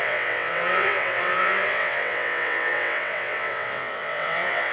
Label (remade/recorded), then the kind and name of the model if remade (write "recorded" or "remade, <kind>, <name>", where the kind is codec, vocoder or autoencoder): remade, vocoder, WaveNeXt